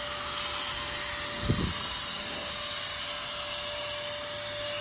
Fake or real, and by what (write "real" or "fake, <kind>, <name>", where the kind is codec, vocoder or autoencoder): real